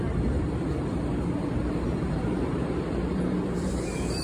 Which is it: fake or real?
fake